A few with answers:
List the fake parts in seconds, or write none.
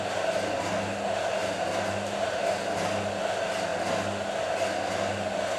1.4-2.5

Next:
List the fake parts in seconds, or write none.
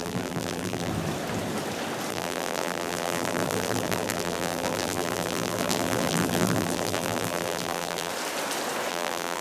0.0-0.9; 2.1-8.1; 8.9-9.4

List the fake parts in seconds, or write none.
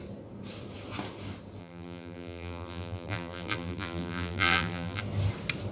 1.6-5.0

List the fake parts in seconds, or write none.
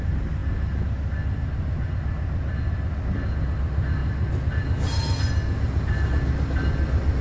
none